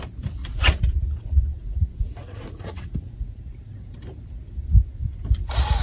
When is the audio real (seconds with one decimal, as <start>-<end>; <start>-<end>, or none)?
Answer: 0.0-0.4; 3.5-5.8